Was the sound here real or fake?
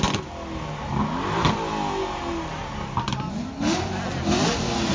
real